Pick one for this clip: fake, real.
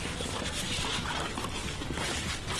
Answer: real